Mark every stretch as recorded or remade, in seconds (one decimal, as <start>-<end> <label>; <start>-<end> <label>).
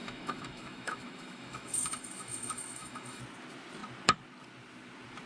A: 0.0-3.2 remade; 3.2-5.3 recorded